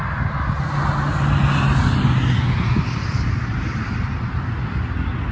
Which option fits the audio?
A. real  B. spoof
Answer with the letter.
A